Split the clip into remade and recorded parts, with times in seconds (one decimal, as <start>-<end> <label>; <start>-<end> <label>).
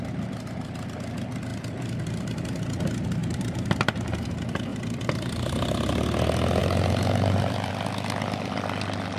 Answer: 0.0-3.2 recorded; 3.2-4.3 remade; 4.3-4.7 recorded; 4.7-5.9 remade; 5.9-6.6 recorded; 6.6-7.7 remade; 7.7-9.2 recorded